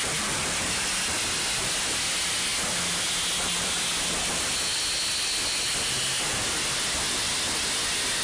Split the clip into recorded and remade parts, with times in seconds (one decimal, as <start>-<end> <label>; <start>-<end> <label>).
0.0-8.2 recorded